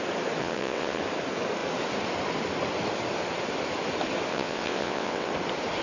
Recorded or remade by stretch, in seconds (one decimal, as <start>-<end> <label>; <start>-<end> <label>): 0.0-0.4 recorded; 0.4-1.0 remade; 1.0-4.3 recorded; 4.3-5.3 remade; 5.3-5.8 recorded